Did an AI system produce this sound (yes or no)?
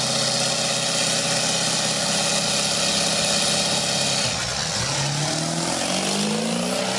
no